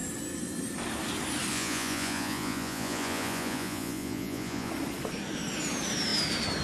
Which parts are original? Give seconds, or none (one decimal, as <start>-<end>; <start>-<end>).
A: 0.0-1.5; 4.7-6.6